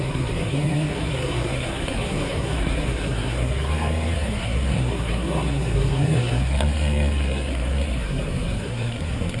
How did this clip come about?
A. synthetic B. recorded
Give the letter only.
A